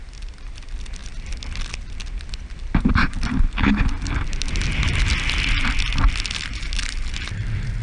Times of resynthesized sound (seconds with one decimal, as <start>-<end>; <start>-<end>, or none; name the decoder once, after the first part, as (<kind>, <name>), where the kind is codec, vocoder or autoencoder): none